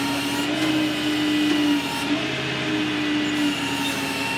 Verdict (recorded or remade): recorded